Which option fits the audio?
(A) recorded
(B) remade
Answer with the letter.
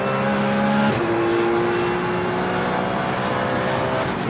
A